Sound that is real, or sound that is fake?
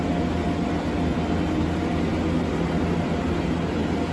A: real